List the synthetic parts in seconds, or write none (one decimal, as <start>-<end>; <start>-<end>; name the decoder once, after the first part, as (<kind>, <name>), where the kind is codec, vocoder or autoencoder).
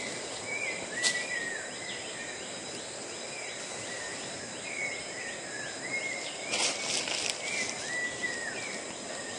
none